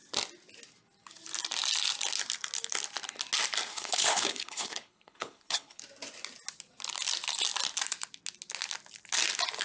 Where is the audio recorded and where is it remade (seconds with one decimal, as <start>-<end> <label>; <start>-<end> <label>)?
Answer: 0.0-3.7 recorded; 3.7-5.8 remade; 5.8-9.6 recorded